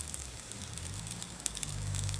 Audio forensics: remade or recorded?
remade